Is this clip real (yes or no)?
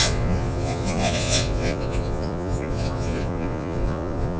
no